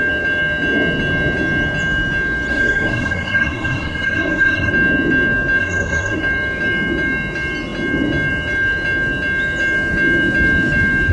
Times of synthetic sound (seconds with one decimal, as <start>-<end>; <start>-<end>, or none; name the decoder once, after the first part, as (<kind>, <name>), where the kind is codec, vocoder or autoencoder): 2.5-4.7 (codec, SNAC); 5.6-6.2